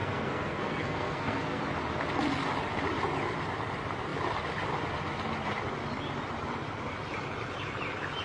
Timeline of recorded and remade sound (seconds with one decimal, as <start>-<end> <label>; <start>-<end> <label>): 0.0-1.6 remade; 1.6-8.2 recorded